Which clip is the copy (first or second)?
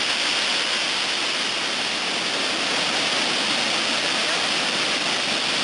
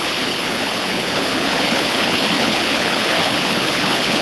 second